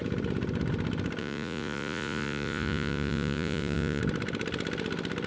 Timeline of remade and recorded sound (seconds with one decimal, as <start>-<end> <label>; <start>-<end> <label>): 0.0-1.2 recorded; 1.2-4.0 remade; 4.0-5.3 recorded